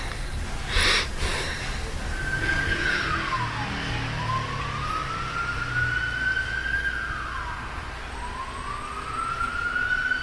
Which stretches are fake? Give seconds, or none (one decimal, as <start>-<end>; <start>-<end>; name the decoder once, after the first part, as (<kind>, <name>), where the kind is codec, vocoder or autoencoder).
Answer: none